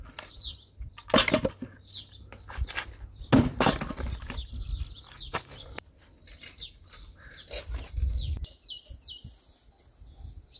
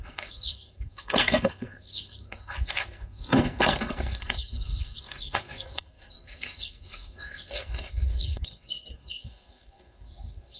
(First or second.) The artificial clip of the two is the second